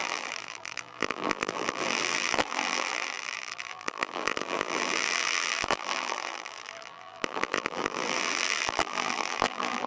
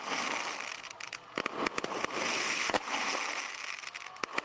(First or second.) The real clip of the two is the second